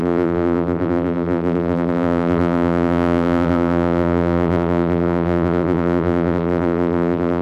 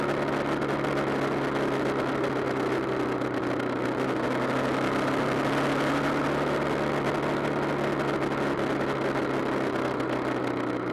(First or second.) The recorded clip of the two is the second